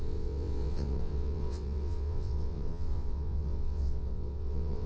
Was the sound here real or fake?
fake